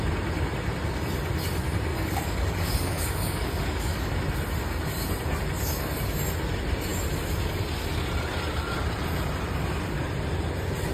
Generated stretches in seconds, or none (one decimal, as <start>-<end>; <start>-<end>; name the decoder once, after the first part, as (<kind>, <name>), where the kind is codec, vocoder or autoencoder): 1.9-4.1 (codec, DAC)